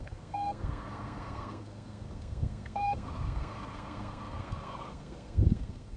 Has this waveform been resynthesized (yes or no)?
yes